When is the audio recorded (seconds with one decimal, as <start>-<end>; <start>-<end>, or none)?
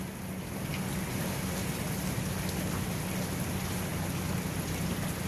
0.0-5.3